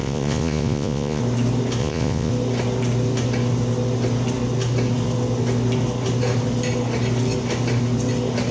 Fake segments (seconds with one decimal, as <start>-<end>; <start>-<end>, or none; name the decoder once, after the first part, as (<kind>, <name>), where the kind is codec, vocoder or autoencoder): 0.0-1.2 (vocoder, Vocos); 1.8-2.3